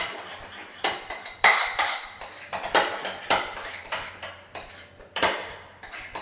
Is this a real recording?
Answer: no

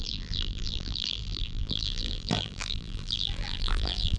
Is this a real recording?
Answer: no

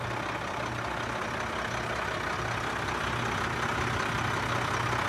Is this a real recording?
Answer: yes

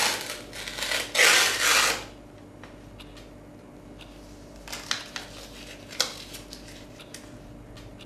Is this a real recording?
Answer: yes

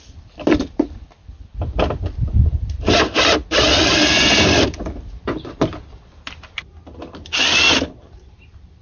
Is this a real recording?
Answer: no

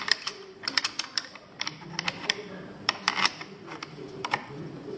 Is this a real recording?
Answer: no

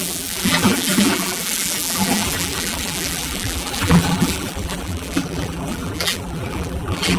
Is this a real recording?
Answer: no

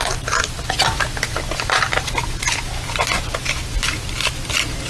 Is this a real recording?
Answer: no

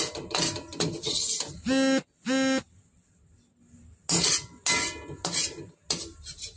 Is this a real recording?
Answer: yes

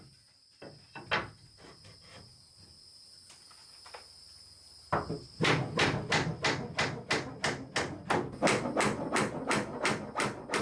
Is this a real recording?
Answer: yes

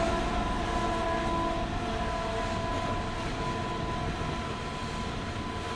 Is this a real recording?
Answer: yes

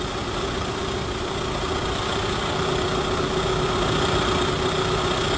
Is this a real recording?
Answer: yes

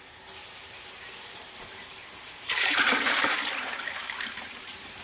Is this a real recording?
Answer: no